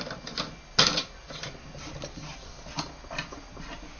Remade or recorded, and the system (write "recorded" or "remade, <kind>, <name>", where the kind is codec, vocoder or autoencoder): recorded